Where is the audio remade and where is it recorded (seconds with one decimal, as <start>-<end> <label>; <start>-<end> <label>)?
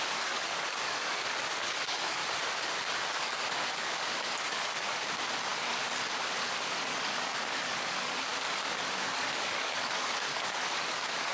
0.0-2.2 remade; 2.2-3.1 recorded; 3.1-11.3 remade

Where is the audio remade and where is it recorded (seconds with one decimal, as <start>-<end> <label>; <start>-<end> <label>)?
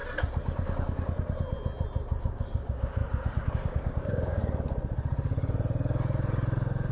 0.0-2.2 recorded; 2.2-3.0 remade; 3.0-3.5 recorded; 3.5-4.4 remade; 4.4-6.9 recorded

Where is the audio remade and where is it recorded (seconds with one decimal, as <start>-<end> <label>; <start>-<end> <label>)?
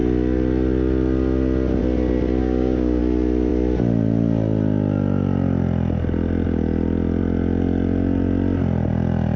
0.0-2.4 recorded; 2.4-3.0 remade; 3.0-9.4 recorded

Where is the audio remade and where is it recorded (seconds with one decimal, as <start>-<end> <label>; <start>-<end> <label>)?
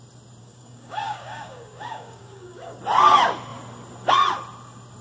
0.0-0.4 recorded; 0.4-2.8 remade; 2.8-5.0 recorded